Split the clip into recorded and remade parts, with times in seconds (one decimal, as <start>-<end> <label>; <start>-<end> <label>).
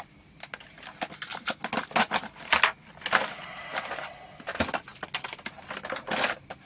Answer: 0.0-6.7 recorded